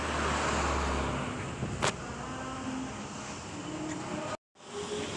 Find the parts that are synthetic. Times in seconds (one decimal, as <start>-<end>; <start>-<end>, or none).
none